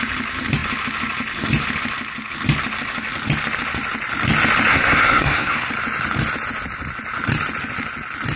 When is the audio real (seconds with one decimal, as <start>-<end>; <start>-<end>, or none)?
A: 0.0-4.7; 5.7-8.4